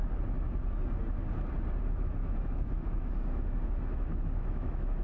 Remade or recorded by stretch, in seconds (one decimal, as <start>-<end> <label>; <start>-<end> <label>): 0.0-1.8 recorded; 1.8-5.0 remade